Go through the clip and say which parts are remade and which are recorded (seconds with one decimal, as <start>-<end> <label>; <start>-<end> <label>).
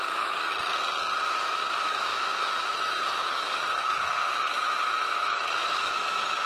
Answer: 0.0-0.5 remade; 0.5-1.4 recorded; 1.4-6.5 remade